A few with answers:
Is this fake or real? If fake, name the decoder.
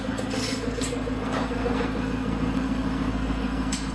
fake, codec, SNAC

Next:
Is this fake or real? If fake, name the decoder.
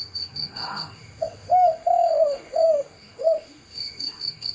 fake, autoencoder, DAC-VAE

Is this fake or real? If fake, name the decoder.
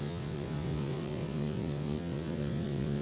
fake, vocoder, WaveNeXt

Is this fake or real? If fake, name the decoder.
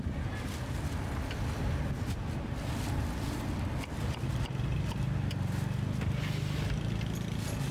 real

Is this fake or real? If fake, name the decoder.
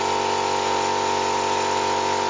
real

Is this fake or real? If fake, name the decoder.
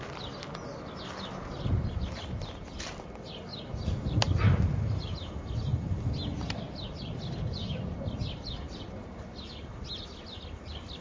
real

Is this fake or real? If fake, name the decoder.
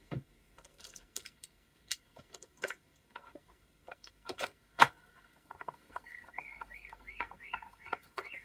fake, codec, SNAC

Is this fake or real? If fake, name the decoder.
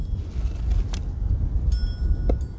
real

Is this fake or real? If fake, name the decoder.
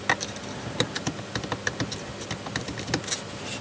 real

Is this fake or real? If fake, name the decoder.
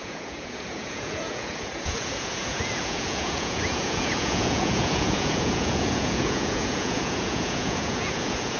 fake, vocoder, Vocos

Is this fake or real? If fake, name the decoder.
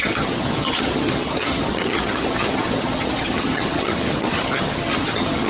fake, vocoder, HiFi-GAN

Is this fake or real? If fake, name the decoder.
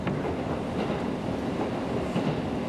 real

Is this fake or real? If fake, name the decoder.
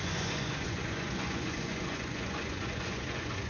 fake, vocoder, Vocos